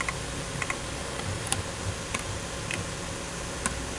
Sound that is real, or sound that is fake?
real